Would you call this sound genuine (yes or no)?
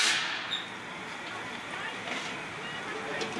yes